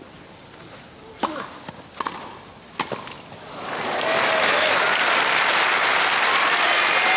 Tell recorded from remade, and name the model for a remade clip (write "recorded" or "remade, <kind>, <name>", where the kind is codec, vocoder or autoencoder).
recorded